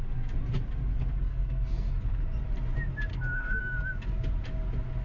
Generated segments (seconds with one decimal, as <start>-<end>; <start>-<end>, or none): 1.3-1.9; 3.1-3.6